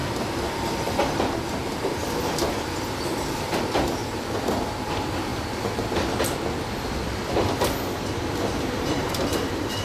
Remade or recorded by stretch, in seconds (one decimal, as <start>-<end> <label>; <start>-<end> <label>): 0.0-1.2 recorded; 1.2-4.0 remade; 4.0-4.8 recorded; 4.8-5.3 remade; 5.3-7.0 recorded; 7.0-9.8 remade